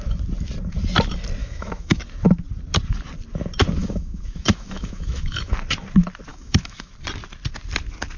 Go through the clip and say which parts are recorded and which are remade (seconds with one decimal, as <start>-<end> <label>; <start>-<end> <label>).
0.0-1.4 recorded; 1.4-2.0 remade; 2.0-3.8 recorded; 3.8-5.5 remade; 5.5-6.3 recorded; 6.3-6.9 remade; 6.9-8.2 recorded